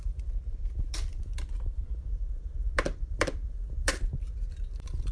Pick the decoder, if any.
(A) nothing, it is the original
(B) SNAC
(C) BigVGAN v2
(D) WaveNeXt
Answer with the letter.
C